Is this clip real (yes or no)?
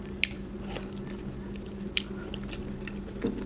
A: yes